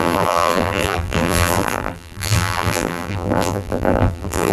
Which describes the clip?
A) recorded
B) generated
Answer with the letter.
B